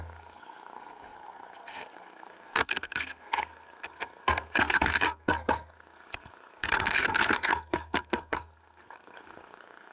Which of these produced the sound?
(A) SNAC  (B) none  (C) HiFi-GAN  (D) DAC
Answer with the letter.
A